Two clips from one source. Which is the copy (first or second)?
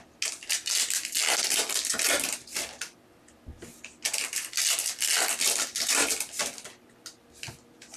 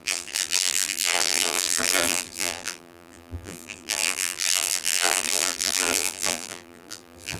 second